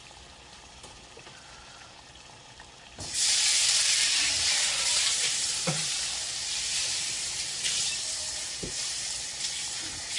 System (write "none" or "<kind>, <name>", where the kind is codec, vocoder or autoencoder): vocoder, BigVGAN v2